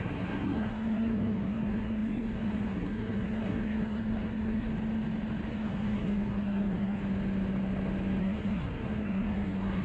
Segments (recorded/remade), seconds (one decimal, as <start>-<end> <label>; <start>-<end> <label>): 0.0-4.7 remade; 4.7-5.5 recorded; 5.5-7.0 remade; 7.0-8.2 recorded; 8.2-9.8 remade